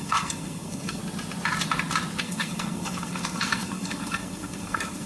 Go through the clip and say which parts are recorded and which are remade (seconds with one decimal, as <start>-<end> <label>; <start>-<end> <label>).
0.0-1.0 remade; 1.0-2.2 recorded; 2.2-5.1 remade